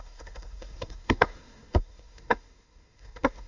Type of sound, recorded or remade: remade